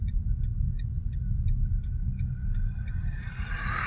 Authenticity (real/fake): real